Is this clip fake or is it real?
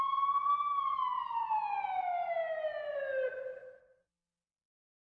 real